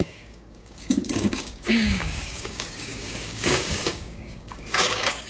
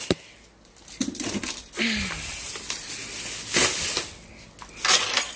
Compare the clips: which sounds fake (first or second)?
first